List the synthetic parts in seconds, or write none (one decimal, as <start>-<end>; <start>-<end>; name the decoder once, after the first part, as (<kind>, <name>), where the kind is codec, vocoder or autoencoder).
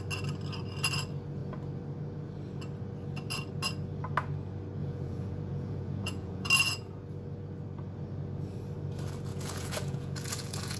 4.8-6.5 (vocoder, Vocos); 9.3-10.8